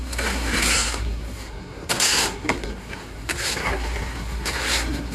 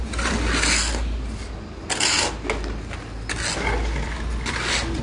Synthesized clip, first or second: first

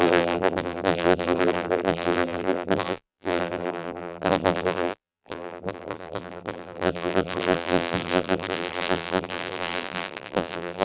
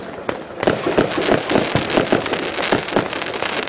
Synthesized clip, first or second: first